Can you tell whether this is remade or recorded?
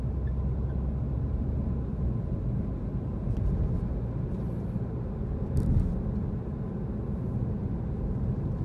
recorded